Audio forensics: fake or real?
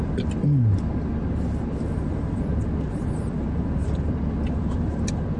real